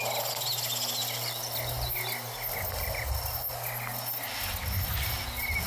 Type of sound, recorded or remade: recorded